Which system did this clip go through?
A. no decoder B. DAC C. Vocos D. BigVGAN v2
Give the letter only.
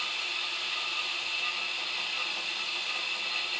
A